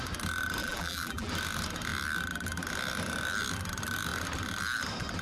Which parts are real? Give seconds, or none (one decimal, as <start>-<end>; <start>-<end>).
0.0-0.6; 1.3-5.2

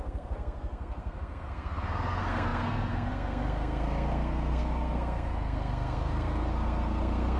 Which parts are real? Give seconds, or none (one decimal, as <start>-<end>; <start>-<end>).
none

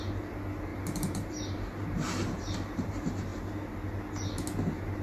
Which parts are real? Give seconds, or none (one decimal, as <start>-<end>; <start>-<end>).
0.0-0.7; 2.9-5.0

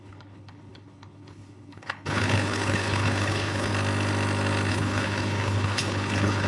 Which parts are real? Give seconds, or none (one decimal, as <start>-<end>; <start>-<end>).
3.7-4.7

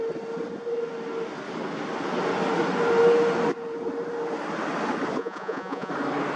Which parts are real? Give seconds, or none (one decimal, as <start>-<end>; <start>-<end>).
0.0-5.2; 5.9-6.4

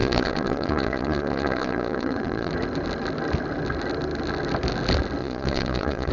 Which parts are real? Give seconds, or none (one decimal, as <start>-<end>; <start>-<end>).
2.5-5.2

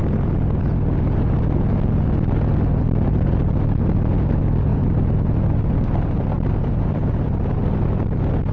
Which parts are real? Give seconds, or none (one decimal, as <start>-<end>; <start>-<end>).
0.0-4.7; 7.4-8.5